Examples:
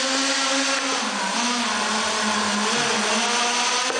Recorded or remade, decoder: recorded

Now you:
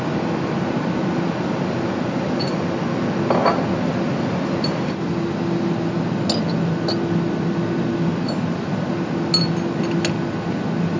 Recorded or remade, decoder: recorded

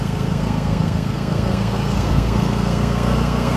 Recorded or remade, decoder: remade, codec, SNAC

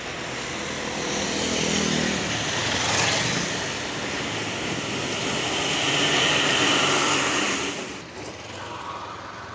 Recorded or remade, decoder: recorded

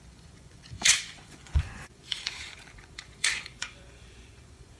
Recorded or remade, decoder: remade, vocoder, Vocos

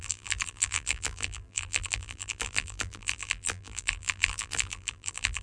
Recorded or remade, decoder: remade, vocoder, BigVGAN v2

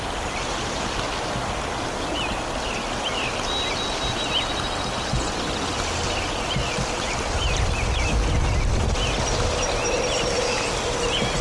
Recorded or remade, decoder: recorded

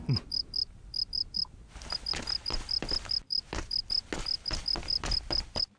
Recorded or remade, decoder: recorded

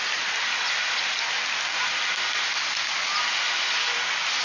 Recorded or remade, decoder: recorded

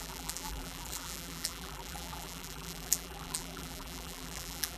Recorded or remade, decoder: remade, vocoder, BigVGAN v2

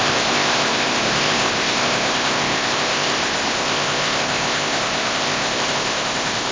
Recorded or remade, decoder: remade, codec, ZipCodec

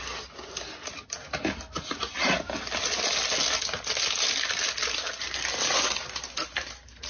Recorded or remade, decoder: recorded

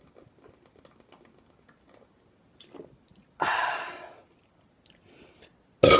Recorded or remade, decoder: recorded